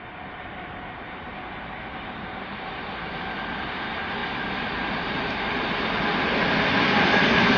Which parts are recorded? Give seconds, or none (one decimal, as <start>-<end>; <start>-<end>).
0.0-7.6